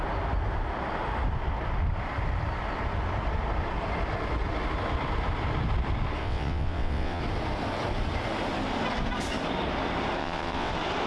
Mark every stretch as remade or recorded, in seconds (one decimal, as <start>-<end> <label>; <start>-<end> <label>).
0.0-6.2 recorded; 6.2-7.2 remade; 7.2-10.2 recorded; 10.2-10.7 remade; 10.7-11.1 recorded